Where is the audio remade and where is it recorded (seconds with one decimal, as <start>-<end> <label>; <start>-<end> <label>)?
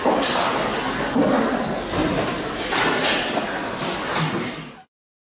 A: 0.0-5.2 recorded